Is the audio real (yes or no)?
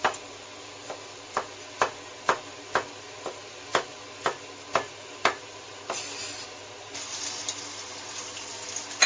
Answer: yes